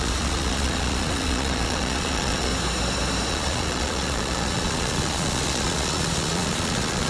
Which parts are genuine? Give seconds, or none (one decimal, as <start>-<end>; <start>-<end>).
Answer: 2.5-3.3